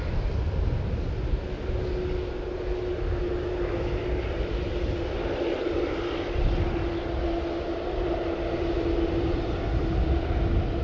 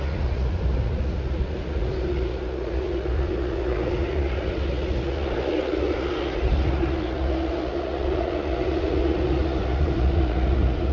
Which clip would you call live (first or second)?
first